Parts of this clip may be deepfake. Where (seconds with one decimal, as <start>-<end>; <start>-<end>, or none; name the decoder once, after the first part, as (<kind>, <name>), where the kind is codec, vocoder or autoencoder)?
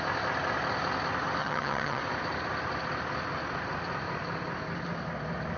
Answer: 1.4-2.0 (vocoder, HiFi-GAN)